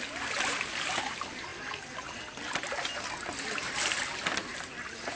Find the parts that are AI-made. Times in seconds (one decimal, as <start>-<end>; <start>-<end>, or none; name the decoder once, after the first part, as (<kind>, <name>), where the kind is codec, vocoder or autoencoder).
none